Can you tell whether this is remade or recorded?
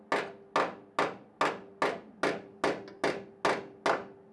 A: recorded